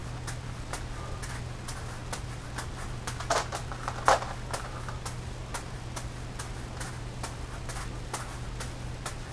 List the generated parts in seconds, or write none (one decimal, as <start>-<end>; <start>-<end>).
none